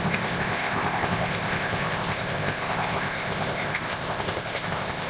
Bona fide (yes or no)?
no